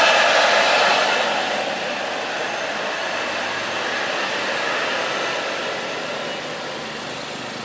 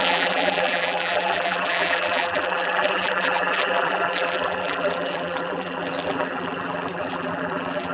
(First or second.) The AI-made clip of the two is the second